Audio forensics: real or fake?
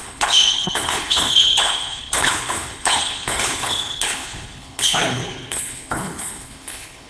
fake